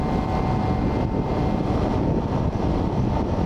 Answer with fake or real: real